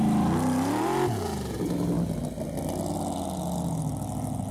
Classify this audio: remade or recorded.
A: recorded